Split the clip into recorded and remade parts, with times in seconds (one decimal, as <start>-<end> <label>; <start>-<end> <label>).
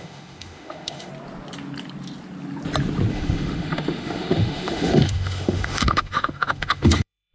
0.0-1.1 remade; 1.1-3.1 recorded; 3.1-7.3 remade